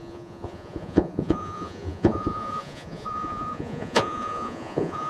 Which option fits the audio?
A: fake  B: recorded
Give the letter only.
A